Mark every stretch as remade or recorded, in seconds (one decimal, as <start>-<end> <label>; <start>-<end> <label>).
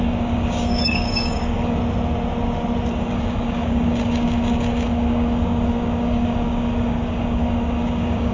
0.0-1.8 remade; 1.8-2.9 recorded; 2.9-8.3 remade